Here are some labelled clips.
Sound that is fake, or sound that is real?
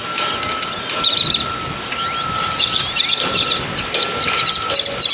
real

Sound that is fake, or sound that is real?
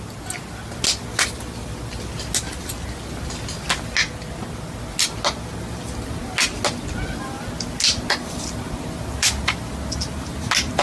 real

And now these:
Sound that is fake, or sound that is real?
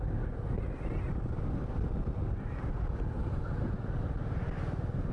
real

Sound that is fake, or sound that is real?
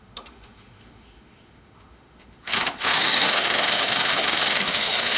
fake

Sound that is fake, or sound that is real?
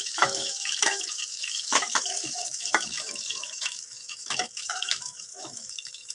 fake